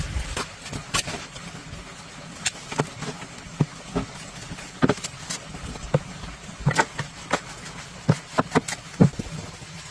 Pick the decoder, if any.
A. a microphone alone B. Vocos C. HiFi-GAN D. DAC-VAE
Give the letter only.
A